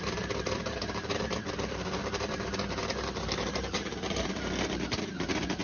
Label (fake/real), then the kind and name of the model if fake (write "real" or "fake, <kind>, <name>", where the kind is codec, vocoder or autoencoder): fake, vocoder, BigVGAN v2